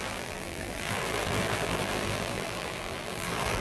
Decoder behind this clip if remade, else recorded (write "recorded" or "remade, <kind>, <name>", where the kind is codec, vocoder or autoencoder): remade, vocoder, BigVGAN v2